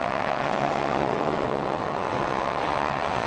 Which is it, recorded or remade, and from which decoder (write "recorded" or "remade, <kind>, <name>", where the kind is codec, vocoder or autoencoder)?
remade, vocoder, WaveNeXt